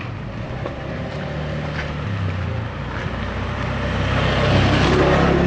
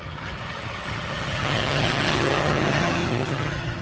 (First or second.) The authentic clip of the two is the first